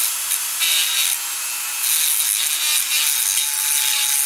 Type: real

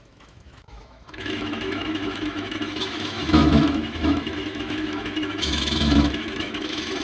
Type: fake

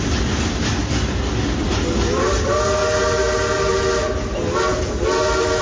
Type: real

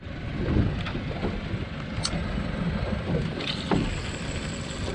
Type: real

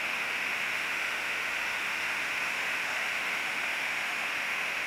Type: fake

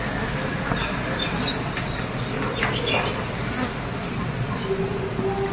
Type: real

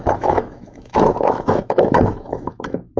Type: fake